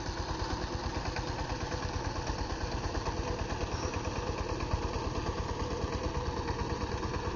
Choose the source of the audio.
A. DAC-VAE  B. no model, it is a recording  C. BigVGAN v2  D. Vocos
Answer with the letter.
B